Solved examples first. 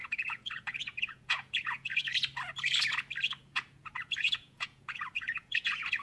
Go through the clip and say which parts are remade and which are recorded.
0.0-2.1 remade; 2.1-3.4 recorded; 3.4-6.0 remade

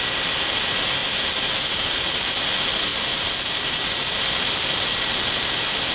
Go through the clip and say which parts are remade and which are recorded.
0.0-1.0 recorded; 1.0-2.4 remade; 2.4-2.9 recorded; 2.9-4.2 remade; 4.2-5.9 recorded

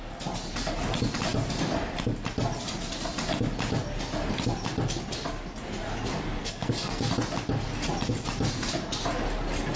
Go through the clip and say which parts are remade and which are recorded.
0.0-6.4 recorded; 6.4-7.1 remade; 7.1-9.8 recorded

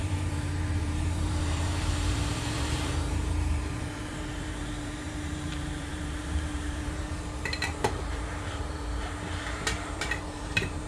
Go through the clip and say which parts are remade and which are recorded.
0.0-10.9 remade

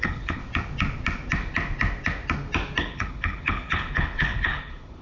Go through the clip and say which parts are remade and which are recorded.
0.0-0.4 remade; 0.4-2.8 recorded; 2.8-5.0 remade

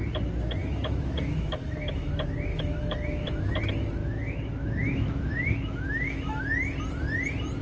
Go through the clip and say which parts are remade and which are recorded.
0.0-0.6 recorded; 0.6-2.1 remade; 2.1-2.5 recorded; 2.5-3.4 remade; 3.4-4.0 recorded; 4.0-6.4 remade; 6.4-7.6 recorded